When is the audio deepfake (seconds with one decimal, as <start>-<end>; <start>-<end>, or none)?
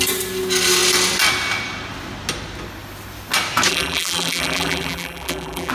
3.7-5.7